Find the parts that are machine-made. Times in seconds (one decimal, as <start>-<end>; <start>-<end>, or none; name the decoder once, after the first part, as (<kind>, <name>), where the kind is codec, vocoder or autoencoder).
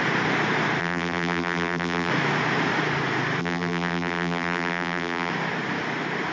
0.8-2.1 (vocoder, BigVGAN v2); 3.4-5.3